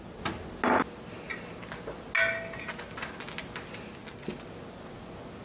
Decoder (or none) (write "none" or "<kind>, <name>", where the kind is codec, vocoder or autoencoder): none